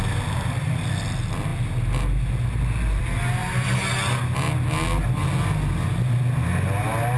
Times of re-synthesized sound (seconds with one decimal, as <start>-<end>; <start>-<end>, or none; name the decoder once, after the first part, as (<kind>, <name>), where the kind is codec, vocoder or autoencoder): none